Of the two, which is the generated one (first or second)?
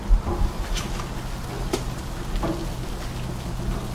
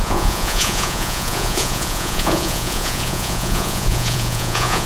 second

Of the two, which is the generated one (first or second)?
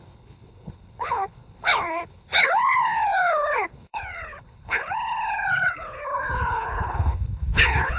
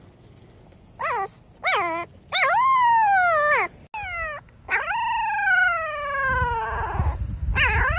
first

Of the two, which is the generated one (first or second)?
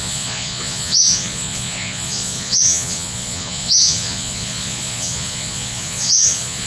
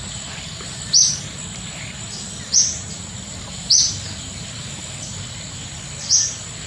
first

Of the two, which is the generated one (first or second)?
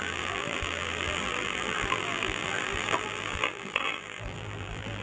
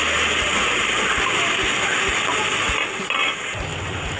first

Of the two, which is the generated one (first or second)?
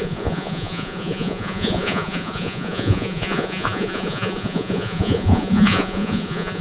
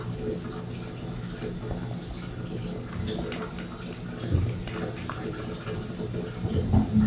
first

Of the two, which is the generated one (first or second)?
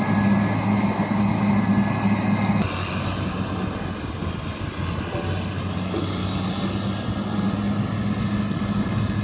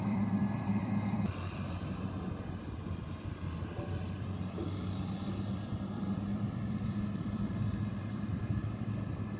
second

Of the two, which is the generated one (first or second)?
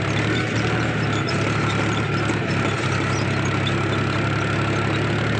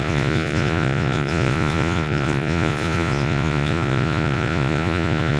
second